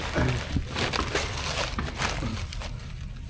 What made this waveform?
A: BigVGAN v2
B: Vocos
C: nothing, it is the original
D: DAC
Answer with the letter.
C